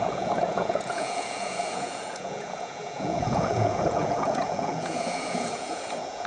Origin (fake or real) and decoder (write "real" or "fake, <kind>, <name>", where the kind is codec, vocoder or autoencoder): fake, vocoder, Vocos